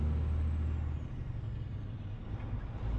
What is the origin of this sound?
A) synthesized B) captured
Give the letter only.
B